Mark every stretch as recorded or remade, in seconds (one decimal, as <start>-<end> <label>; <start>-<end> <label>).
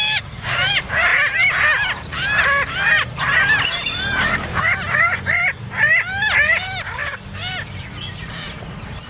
0.0-9.1 recorded